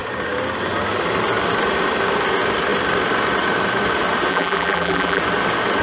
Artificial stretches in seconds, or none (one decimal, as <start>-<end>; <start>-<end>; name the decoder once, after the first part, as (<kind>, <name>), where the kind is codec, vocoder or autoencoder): 4.3-5.2 (vocoder, BigVGAN v2)